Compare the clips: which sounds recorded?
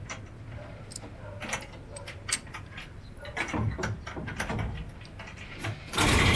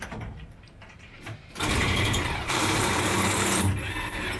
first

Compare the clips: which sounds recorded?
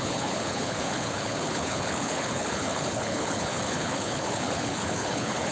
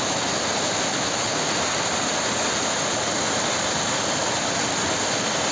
second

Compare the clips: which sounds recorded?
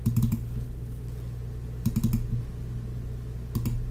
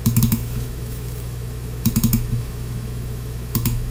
first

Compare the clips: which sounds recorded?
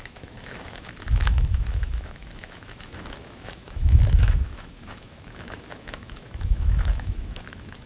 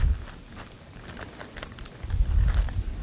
second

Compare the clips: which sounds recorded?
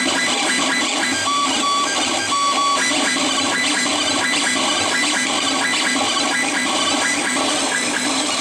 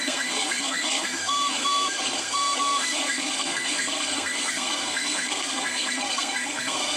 first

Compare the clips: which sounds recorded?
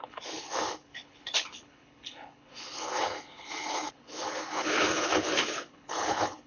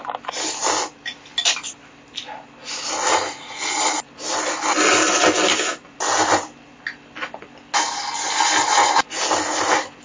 second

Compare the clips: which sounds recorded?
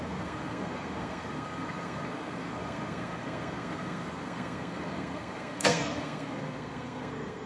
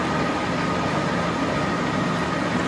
second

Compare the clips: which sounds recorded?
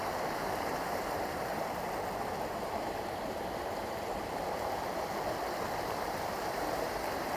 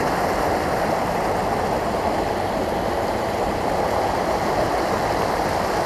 second